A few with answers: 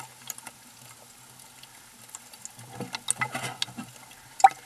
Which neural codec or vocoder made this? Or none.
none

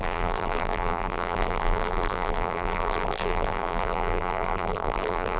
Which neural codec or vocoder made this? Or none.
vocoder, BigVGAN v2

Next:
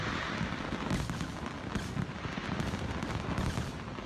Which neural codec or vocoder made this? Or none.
none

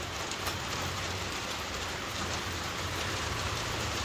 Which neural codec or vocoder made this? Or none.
vocoder, BigVGAN v2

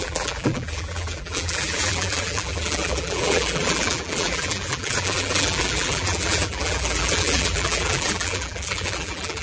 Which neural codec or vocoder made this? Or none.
vocoder, BigVGAN v2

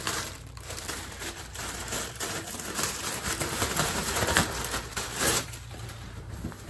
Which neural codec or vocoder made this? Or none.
vocoder, BigVGAN v2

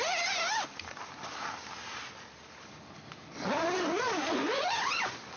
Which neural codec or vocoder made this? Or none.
vocoder, BigVGAN v2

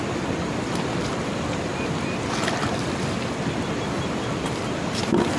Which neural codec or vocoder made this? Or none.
none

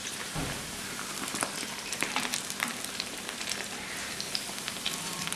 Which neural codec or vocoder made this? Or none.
vocoder, BigVGAN v2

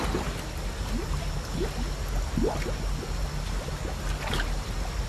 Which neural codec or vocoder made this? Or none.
none